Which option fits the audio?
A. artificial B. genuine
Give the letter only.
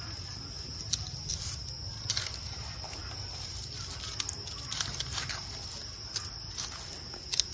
B